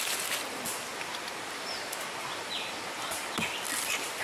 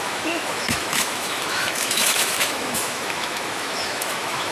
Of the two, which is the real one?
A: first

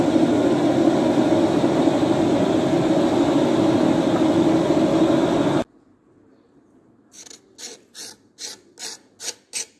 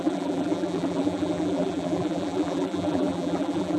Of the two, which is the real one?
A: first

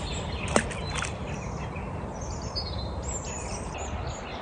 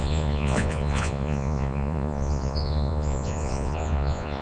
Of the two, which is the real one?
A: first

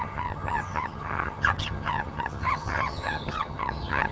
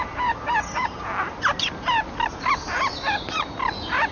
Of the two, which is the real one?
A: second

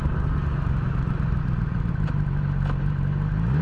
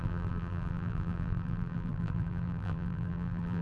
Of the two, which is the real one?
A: first